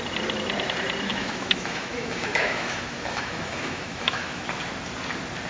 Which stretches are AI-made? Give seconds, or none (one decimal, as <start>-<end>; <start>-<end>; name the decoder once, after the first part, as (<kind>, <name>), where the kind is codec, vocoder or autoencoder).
1.1-4.4 (autoencoder, DAC-VAE)

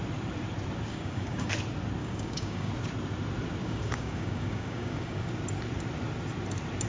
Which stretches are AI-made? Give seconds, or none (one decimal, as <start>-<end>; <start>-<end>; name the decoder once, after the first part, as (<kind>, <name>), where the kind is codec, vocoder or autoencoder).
0.9-1.5 (codec, DAC); 2.0-2.7; 3.6-5.3

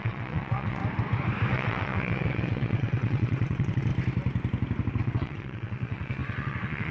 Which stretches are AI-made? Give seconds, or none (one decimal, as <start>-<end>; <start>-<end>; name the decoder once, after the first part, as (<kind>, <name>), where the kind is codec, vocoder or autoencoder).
0.0-0.8 (vocoder, WaveNeXt); 1.5-3.9; 5.0-6.9

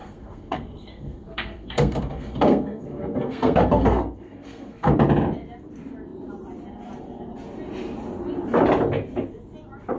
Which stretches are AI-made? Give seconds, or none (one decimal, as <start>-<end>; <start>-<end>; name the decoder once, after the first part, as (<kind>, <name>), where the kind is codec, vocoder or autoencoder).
0.0-4.9 (codec, SNAC)

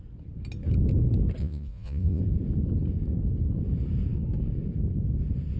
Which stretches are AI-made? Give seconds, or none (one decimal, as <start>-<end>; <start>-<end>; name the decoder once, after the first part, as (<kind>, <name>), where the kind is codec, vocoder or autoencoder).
1.4-2.2 (vocoder, Vocos)

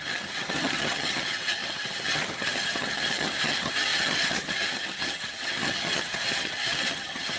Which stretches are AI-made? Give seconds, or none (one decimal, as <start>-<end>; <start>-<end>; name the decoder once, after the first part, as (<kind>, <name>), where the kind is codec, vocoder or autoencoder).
0.0-7.4 (vocoder, HiFi-GAN)